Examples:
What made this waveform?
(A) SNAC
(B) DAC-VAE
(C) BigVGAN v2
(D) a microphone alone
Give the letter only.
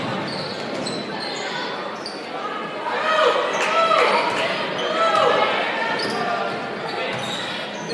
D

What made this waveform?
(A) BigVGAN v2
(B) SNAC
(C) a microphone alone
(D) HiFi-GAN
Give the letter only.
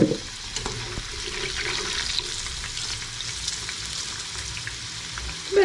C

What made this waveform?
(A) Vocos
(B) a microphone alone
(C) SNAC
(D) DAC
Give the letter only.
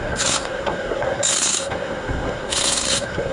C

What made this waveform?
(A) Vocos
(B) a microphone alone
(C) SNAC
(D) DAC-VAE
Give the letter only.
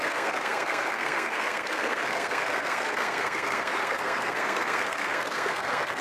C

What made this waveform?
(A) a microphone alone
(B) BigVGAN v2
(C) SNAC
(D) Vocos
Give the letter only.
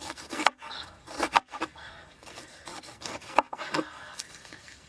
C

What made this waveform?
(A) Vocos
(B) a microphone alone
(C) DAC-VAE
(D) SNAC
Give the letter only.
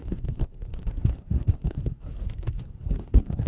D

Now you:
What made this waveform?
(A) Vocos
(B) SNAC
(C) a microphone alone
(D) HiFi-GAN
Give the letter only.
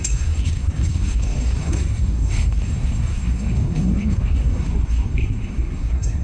B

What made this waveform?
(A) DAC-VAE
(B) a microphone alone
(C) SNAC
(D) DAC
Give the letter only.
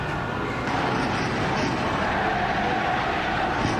B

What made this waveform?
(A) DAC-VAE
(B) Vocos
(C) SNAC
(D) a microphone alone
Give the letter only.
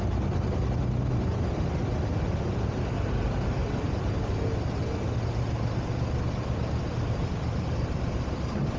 D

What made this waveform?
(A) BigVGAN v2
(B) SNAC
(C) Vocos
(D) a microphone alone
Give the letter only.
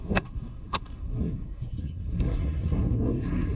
B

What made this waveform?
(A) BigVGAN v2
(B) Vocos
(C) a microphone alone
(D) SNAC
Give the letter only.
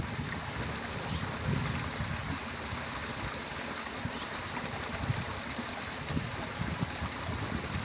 C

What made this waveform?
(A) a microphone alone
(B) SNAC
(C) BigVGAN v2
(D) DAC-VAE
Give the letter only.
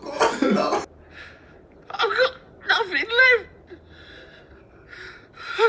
A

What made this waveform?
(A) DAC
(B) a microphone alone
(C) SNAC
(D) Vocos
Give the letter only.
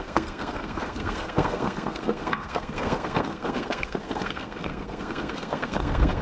C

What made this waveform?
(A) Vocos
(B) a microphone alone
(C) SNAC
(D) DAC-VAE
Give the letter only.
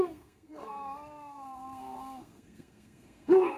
C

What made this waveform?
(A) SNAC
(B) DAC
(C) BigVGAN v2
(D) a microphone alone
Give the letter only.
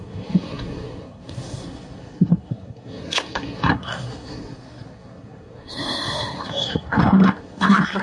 A